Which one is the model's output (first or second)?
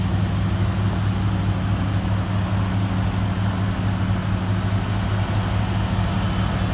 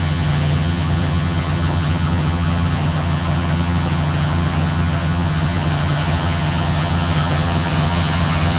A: second